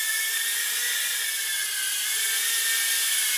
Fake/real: real